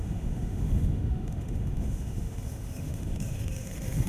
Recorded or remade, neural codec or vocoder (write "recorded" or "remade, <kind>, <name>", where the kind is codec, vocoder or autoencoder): remade, autoencoder, DAC-VAE